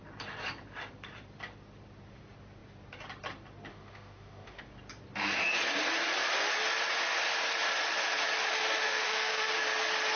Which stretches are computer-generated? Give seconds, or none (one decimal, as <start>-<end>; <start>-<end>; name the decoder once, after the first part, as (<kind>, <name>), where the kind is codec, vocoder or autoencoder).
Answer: 3.7-4.6 (autoencoder, DAC-VAE); 8.4-9.5